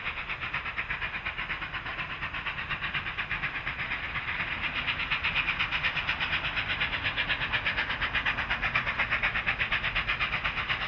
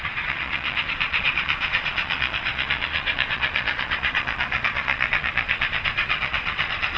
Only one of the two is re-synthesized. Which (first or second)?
second